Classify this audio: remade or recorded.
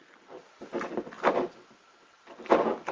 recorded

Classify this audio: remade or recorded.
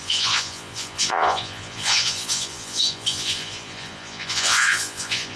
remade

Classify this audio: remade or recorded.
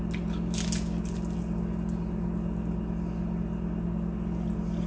recorded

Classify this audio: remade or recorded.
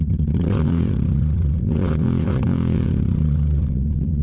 remade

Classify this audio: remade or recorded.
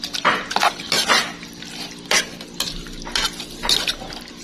recorded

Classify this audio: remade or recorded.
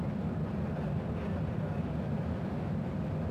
recorded